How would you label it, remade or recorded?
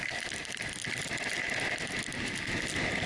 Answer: recorded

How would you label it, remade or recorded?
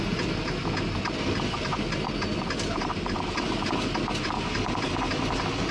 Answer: recorded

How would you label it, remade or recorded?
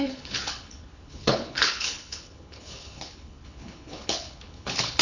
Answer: remade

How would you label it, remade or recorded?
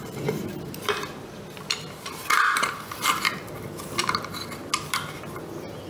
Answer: remade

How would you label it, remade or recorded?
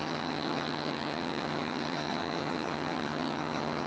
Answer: remade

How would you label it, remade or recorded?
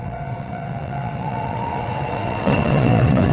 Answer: remade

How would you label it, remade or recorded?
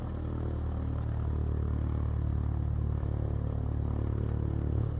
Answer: recorded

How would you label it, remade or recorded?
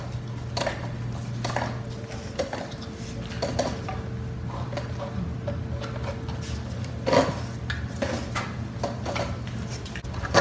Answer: recorded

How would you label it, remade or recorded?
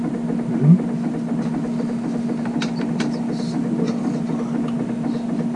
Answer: recorded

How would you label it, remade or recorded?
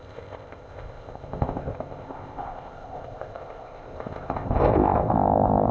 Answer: remade